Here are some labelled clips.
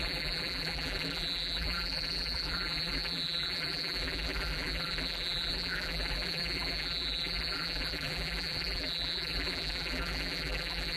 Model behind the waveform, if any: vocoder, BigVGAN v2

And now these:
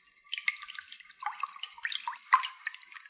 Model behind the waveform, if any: none